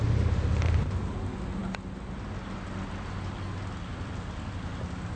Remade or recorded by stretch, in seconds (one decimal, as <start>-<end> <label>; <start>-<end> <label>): 0.0-5.2 recorded